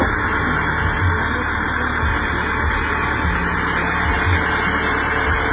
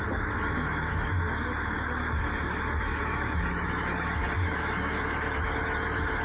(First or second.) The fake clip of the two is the second